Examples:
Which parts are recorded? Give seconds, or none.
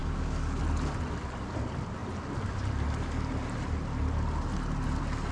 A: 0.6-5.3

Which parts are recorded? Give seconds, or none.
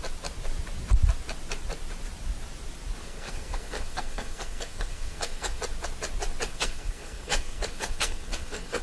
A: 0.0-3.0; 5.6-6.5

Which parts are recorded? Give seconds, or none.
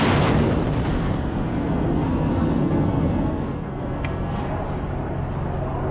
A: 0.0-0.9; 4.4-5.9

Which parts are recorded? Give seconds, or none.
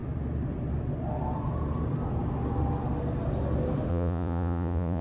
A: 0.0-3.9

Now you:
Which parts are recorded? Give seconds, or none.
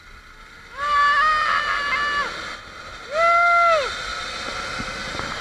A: 0.0-5.4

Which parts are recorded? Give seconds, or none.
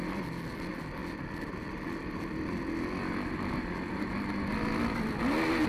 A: 0.0-5.7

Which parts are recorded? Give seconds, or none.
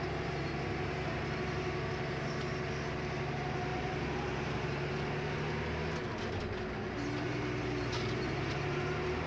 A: 0.0-3.7; 4.9-9.3